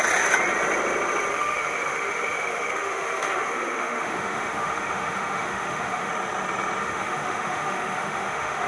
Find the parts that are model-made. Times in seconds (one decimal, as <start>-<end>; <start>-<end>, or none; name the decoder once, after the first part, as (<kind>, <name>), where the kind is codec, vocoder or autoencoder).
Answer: 1.3-6.1 (autoencoder, DAC-VAE); 6.8-8.7